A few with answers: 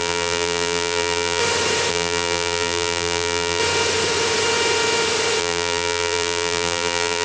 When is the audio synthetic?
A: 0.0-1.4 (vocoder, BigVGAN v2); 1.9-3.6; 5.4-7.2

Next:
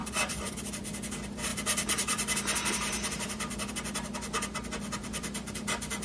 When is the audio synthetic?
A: 0.0-0.6 (vocoder, BigVGAN v2); 1.5-3.7

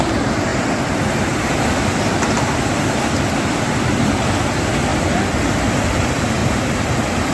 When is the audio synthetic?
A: 0.0-4.9 (vocoder, BigVGAN v2); 5.7-6.4